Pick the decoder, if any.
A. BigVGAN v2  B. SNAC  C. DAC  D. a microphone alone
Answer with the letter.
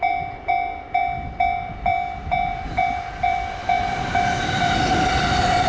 A